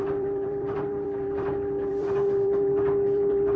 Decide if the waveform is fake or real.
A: fake